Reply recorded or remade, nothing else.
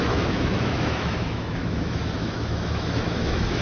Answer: remade